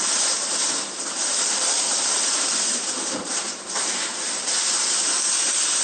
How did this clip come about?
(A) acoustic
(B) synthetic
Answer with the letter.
B